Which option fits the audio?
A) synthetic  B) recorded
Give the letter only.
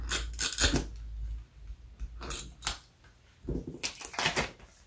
B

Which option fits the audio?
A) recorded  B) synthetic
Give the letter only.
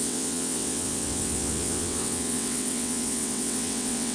B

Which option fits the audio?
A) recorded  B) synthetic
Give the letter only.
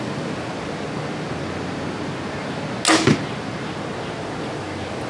A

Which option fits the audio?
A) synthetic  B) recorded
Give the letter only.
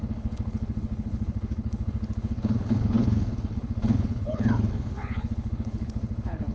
A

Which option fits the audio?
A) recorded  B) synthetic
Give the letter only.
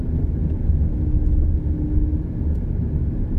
A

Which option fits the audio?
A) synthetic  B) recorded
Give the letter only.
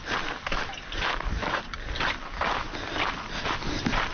B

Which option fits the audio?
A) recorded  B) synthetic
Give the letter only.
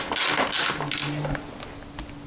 A